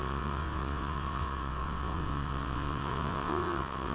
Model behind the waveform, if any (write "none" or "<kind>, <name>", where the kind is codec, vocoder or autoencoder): vocoder, WaveNeXt